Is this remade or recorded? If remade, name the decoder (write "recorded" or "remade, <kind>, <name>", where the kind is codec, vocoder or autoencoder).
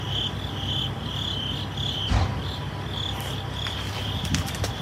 recorded